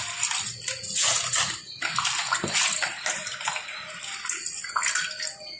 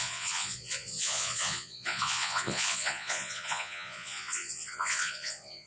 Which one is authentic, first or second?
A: first